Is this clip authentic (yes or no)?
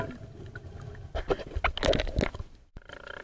yes